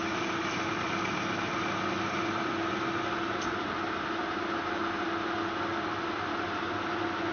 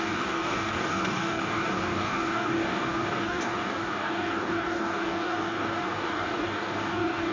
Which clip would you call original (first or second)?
first